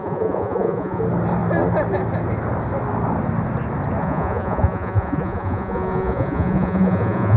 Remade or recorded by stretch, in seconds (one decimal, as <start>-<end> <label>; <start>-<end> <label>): 0.0-1.0 remade; 1.0-4.0 recorded; 4.0-7.4 remade